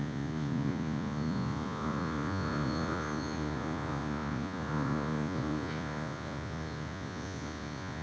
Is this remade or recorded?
remade